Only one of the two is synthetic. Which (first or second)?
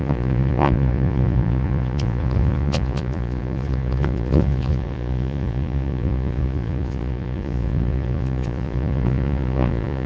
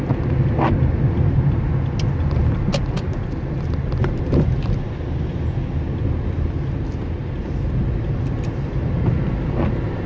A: first